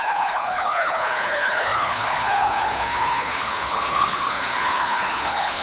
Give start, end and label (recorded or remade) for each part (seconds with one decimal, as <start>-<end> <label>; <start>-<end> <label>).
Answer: 0.0-5.6 remade